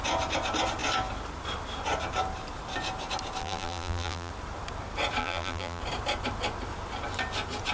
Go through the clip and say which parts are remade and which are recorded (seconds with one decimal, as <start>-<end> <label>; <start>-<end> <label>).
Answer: 0.0-3.4 recorded; 3.4-4.3 remade; 4.3-5.2 recorded; 5.2-5.8 remade; 5.8-7.7 recorded